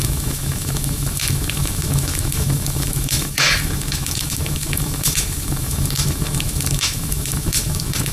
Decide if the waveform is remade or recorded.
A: remade